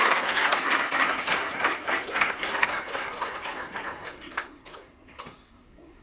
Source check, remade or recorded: remade